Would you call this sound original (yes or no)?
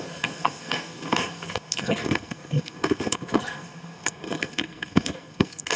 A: no